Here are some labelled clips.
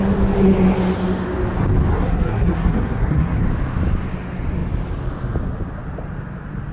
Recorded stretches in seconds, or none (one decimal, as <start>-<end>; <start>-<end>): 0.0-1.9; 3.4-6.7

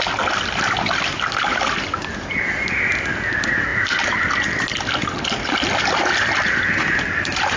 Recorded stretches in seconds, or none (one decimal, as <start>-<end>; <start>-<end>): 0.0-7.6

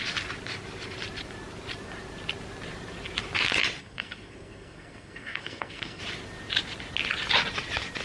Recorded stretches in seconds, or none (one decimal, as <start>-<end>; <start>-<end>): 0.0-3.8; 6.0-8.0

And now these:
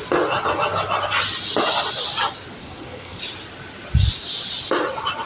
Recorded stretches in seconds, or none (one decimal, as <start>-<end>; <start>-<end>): 0.0-2.6; 3.2-5.3